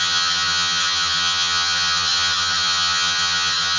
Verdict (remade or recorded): remade